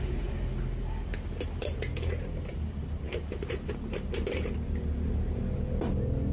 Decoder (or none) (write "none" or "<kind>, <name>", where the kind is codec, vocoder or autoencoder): none